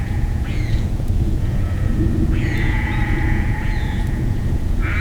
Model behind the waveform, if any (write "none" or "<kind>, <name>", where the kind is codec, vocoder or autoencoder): vocoder, Vocos